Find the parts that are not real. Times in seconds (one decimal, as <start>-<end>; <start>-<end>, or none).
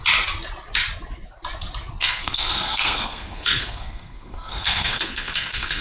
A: 2.0-5.8